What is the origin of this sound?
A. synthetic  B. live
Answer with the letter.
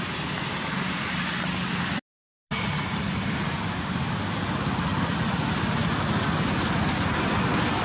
B